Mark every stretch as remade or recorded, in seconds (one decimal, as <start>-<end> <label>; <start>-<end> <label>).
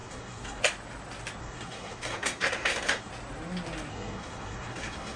0.0-0.6 remade; 0.6-1.4 recorded; 1.4-3.1 remade; 3.1-3.9 recorded; 3.9-5.2 remade